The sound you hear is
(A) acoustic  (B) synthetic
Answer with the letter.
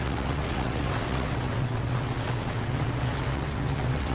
B